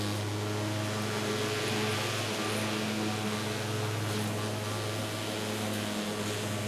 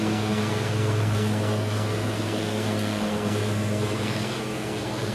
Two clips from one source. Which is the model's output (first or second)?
second